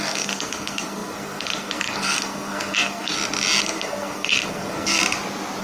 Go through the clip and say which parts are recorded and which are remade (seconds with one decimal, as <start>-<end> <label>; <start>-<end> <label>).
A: 0.0-3.1 remade; 3.1-3.6 recorded; 3.6-5.0 remade; 5.0-5.6 recorded